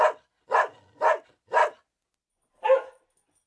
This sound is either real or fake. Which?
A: real